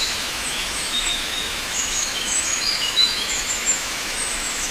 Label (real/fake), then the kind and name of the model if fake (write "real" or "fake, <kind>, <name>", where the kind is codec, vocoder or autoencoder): fake, autoencoder, DAC-VAE